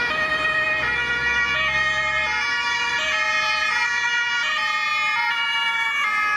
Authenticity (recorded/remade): recorded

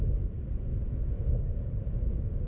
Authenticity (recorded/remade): recorded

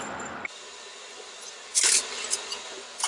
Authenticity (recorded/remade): recorded